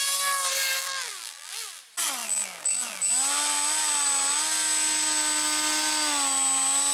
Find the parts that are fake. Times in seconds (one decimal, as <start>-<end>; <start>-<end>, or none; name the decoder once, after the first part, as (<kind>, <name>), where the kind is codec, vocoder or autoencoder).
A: 0.8-1.8 (vocoder, BigVGAN v2); 2.2-3.1